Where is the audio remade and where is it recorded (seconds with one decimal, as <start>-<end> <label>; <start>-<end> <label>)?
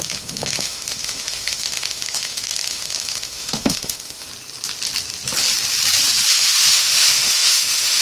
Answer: 0.0-4.3 remade; 4.3-6.3 recorded; 6.3-8.0 remade